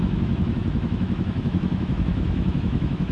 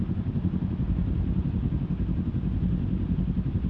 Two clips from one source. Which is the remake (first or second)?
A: first